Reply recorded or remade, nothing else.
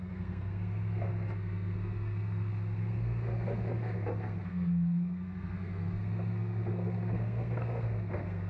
remade